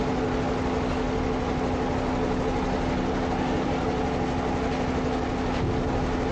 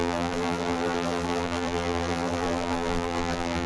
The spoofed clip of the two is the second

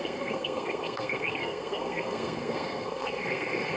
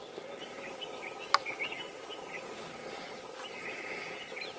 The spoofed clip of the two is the first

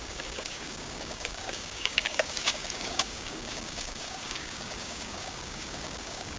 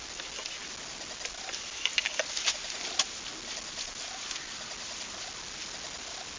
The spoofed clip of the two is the first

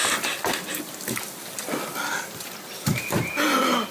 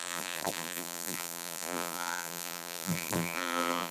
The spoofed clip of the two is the second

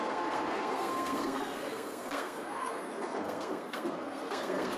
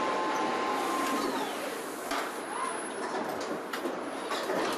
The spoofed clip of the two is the first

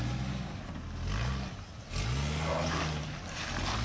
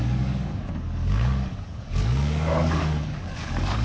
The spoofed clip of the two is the second